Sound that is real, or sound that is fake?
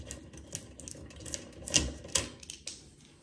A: real